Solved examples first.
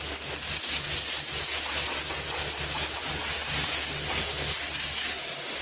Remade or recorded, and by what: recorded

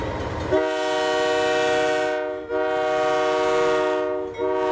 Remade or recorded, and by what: recorded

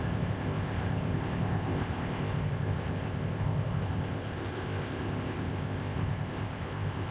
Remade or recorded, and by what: remade, codec, ZipCodec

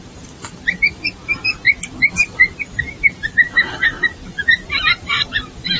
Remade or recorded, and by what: remade, vocoder, BigVGAN v2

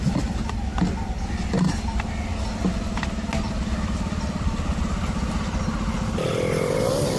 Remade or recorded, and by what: recorded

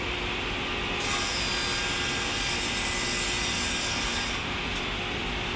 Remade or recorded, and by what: recorded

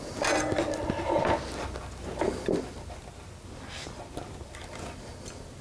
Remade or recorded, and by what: recorded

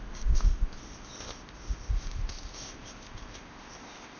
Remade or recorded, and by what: remade, codec, ZipCodec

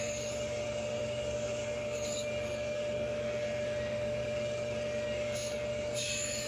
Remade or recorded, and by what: remade, codec, DAC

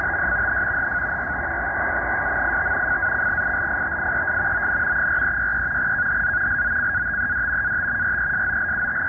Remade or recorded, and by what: recorded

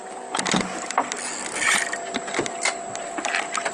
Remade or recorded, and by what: recorded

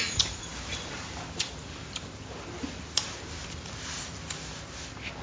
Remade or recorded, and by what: recorded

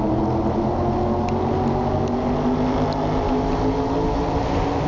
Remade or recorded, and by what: recorded